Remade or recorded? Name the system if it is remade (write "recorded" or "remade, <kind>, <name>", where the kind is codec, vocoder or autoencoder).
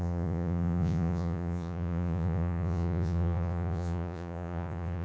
remade, vocoder, Vocos